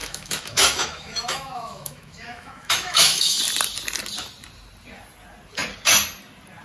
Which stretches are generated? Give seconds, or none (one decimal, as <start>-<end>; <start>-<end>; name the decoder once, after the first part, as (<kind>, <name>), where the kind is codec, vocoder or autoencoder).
0.0-3.4 (autoencoder, DAC-VAE)